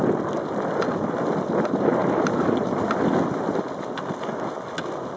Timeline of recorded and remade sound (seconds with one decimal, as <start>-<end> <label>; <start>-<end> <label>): 0.0-5.2 recorded